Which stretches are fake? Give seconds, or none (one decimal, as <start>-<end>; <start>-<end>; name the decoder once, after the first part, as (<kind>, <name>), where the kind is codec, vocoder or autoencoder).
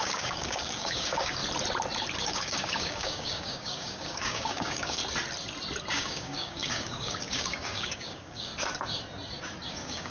0.0-1.4 (codec, DAC); 2.2-5.0; 5.9-8.5; 9.7-10.1